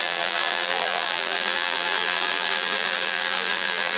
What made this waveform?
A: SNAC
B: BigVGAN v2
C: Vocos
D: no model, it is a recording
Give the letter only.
B